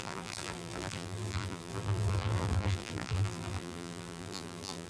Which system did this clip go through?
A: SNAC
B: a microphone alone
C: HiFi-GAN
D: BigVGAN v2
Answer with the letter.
D